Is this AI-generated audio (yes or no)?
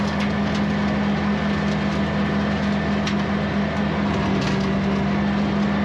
no